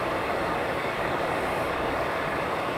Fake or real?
fake